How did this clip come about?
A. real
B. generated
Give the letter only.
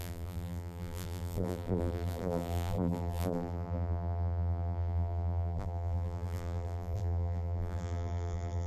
B